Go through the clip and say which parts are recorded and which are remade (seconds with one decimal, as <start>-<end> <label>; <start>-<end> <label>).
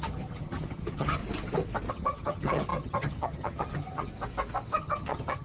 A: 0.0-1.2 remade; 1.2-1.9 recorded; 1.9-4.1 remade; 4.1-4.8 recorded; 4.8-5.4 remade